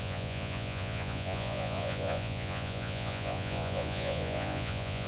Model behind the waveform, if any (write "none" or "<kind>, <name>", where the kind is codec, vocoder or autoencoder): vocoder, Vocos